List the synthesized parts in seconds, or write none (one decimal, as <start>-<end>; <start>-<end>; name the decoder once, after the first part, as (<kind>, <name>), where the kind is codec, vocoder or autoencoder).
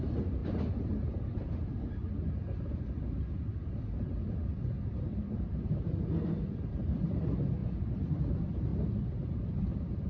none